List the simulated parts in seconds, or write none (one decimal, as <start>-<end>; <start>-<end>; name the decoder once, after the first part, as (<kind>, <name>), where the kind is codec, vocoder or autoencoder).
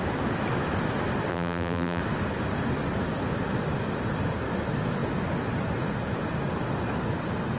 1.3-2.0 (vocoder, BigVGAN v2)